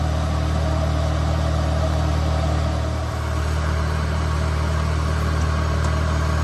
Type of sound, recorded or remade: remade